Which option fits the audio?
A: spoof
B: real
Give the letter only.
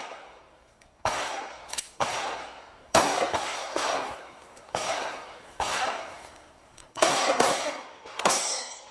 A